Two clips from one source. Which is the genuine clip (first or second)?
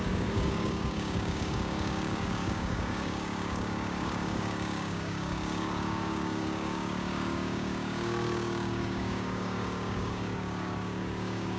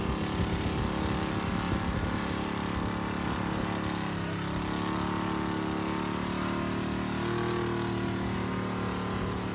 second